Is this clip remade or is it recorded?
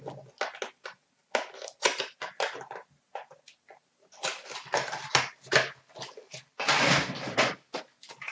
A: recorded